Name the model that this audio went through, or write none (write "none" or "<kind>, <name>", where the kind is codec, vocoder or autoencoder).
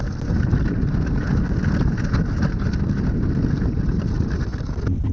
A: none